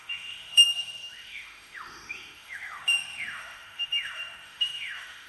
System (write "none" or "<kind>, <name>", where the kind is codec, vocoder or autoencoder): autoencoder, DAC-VAE